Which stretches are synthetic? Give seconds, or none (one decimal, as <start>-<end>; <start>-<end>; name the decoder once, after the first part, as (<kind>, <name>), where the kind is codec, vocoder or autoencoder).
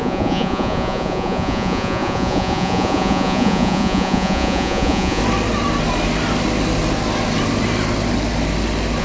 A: 0.0-5.2 (vocoder, Vocos)